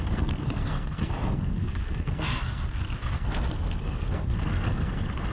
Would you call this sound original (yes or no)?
no